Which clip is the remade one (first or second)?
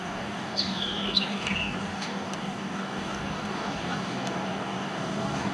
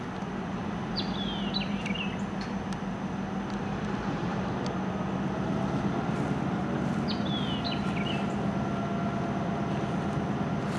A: first